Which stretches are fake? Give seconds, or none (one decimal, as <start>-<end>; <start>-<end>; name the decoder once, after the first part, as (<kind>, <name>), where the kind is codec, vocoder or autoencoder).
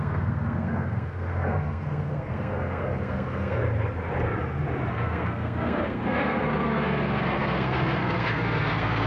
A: 0.0-3.6 (codec, SNAC); 4.9-9.1